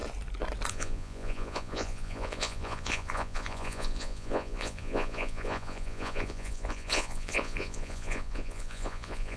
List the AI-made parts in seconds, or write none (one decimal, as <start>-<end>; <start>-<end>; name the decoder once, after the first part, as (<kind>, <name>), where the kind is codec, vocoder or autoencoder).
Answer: 0.7-9.4 (vocoder, Vocos)